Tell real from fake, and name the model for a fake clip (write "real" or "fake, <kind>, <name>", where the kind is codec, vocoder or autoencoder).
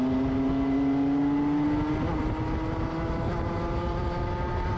real